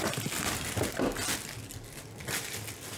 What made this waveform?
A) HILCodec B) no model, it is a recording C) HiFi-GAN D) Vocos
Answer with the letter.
B